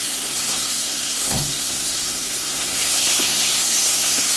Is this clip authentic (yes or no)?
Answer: no